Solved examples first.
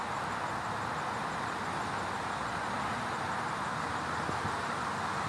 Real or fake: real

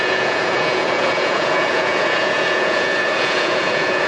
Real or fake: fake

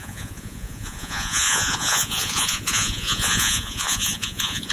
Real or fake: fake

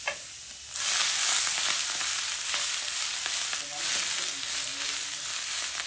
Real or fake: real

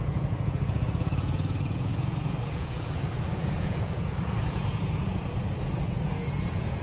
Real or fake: fake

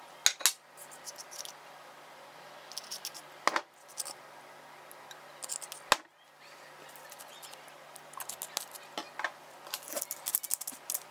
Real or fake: real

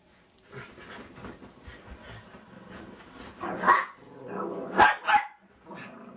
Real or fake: real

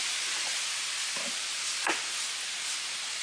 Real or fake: real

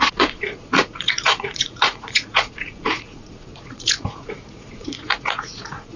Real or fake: fake